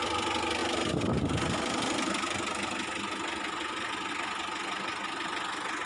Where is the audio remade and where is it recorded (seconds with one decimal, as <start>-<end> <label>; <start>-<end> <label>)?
0.0-5.9 recorded